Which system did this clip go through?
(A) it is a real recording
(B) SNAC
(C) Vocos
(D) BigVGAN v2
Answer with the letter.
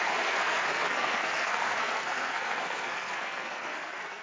B